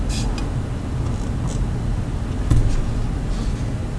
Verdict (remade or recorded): recorded